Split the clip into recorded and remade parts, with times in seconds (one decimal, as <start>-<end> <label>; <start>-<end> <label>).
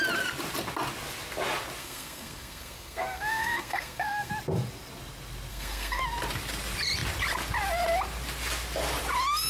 0.0-1.8 recorded; 1.8-4.3 remade; 4.3-5.5 recorded; 5.5-6.0 remade; 6.0-9.5 recorded